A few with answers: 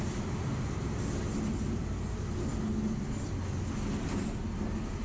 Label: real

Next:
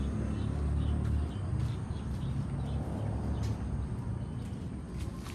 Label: real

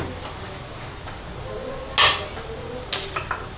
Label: real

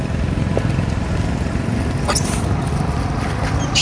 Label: real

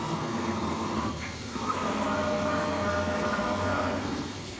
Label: fake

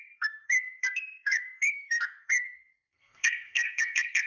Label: fake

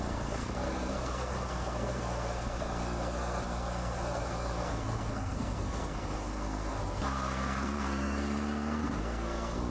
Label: fake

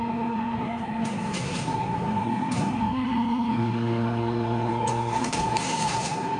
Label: fake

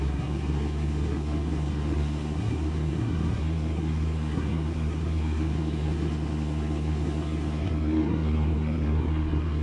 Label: fake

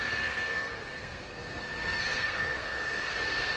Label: fake